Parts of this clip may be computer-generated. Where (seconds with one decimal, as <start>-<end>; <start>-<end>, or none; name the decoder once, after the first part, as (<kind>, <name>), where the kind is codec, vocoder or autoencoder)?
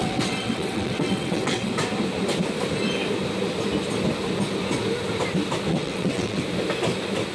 0.0-1.7 (vocoder, WaveNeXt); 5.7-6.4